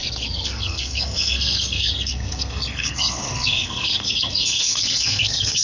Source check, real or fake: fake